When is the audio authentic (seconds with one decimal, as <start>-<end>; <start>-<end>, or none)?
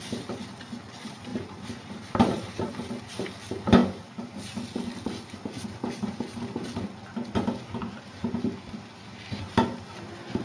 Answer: 0.0-1.3; 2.9-7.8; 8.4-10.4